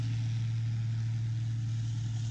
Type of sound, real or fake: real